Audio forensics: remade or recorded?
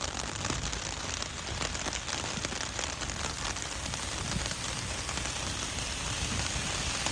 recorded